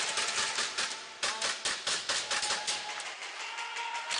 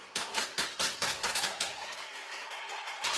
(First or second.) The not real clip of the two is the second